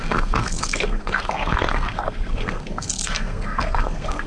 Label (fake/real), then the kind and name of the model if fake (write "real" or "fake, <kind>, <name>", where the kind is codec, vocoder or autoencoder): fake, codec, SNAC